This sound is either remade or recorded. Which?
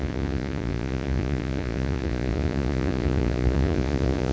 remade